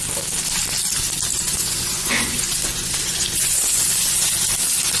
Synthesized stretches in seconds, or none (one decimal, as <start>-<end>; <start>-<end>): 1.3-4.3